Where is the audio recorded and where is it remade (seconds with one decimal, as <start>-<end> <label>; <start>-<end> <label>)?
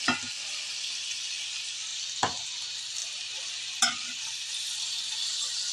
0.0-5.7 recorded